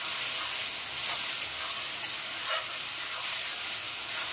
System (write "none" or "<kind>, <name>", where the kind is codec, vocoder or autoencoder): none